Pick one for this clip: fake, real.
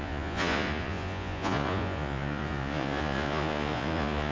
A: fake